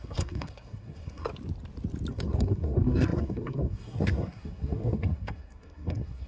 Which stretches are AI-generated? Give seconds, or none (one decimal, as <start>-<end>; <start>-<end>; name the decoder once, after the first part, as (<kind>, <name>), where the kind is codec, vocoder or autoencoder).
0.0-1.3 (codec, SNAC); 2.1-6.3